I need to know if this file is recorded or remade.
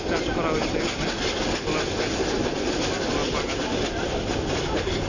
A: recorded